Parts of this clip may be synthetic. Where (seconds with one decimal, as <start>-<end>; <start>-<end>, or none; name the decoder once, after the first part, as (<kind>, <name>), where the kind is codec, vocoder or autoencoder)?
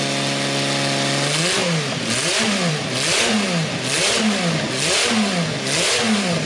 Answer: 1.6-2.7 (vocoder, BigVGAN v2)